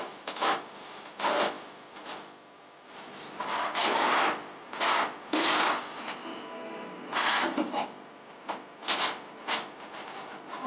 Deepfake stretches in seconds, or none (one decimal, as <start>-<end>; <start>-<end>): none